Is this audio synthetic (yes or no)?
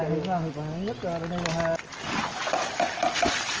no